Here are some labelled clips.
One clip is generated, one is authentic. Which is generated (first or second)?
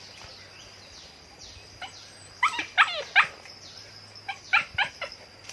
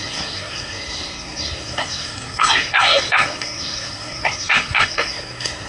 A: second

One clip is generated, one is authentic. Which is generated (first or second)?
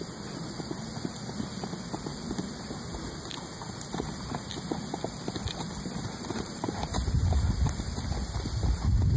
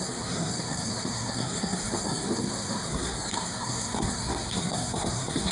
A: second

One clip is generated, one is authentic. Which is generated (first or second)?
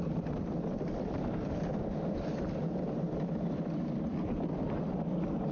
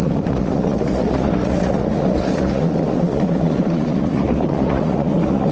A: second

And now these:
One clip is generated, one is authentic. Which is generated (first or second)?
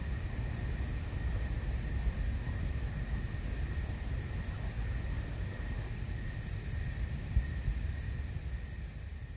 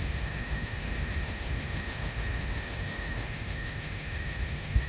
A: second